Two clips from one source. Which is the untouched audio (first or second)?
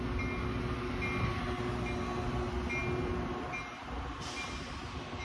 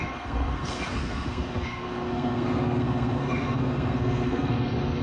first